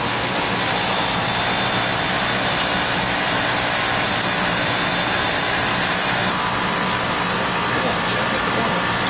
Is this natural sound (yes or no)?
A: yes